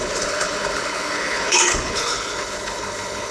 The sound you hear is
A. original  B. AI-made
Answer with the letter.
B